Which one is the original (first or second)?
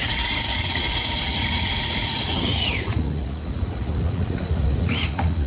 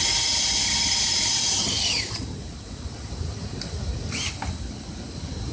second